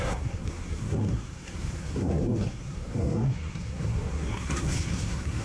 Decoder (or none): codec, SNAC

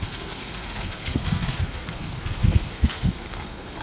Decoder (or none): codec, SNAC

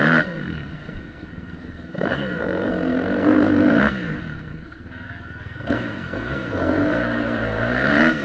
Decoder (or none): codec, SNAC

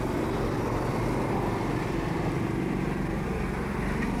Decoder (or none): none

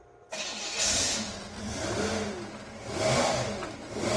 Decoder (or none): none